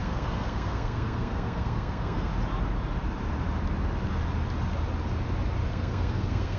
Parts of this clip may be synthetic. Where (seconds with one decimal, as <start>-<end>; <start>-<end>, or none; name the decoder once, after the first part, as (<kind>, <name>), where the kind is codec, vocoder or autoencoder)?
0.0-2.3 (codec, SNAC); 5.7-6.6